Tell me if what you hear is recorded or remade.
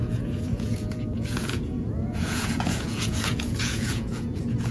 remade